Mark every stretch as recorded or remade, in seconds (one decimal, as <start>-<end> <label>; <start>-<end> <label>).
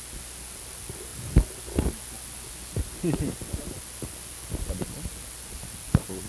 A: 0.0-6.3 recorded